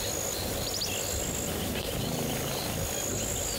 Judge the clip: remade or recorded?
recorded